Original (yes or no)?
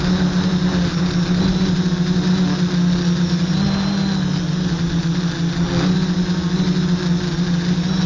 yes